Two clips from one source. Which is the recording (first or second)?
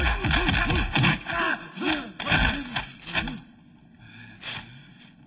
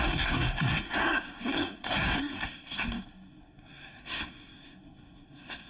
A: first